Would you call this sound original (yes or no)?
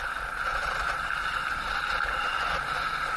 yes